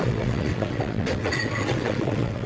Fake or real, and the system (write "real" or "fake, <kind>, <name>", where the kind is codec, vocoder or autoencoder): fake, vocoder, WaveNeXt